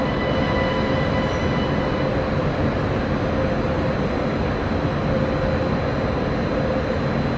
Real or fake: real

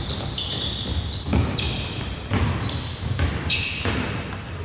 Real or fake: real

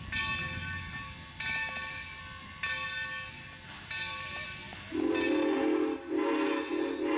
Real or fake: real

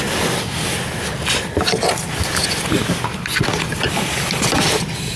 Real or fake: real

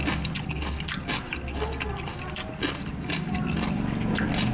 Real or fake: real